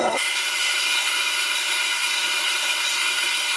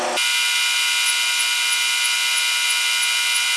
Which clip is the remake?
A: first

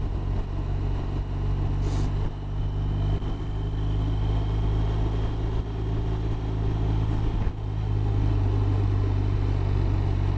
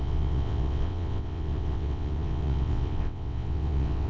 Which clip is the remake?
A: second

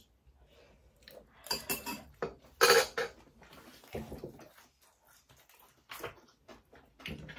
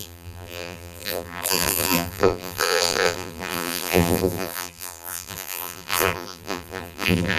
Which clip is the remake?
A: second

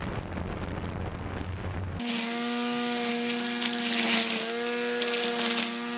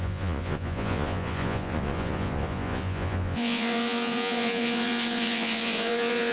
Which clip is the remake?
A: second